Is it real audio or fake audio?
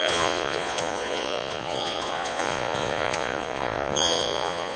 fake